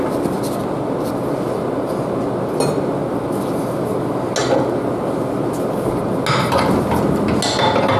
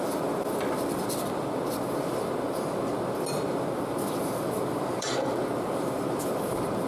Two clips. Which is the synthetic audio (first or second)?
second